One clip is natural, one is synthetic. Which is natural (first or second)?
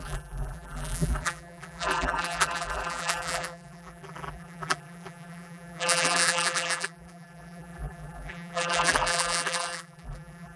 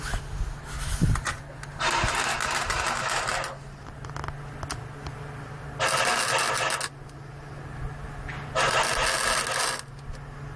second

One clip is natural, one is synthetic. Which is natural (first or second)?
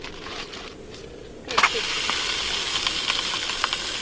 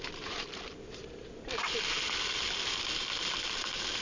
first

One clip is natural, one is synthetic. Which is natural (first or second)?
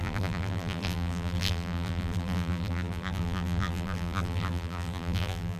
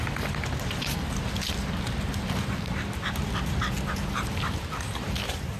second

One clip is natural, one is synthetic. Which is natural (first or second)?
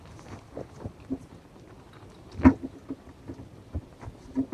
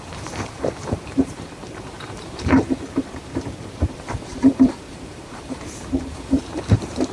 first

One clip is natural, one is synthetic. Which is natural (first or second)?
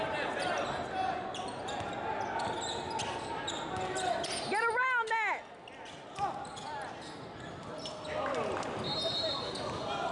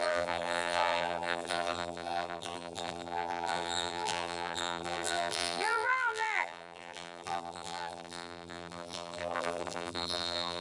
first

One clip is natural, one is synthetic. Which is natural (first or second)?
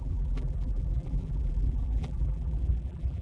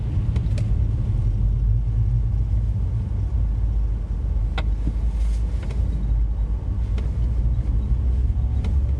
second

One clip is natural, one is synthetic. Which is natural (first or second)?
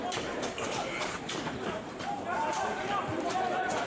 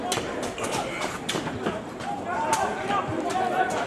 second